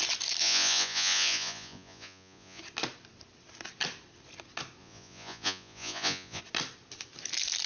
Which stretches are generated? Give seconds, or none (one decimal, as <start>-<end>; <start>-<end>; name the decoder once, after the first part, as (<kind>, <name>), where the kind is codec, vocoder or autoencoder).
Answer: 0.4-2.6 (vocoder, Vocos); 4.8-6.4